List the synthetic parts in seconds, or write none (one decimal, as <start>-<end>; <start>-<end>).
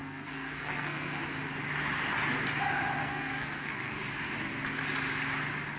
0.0-1.2; 3.0-4.1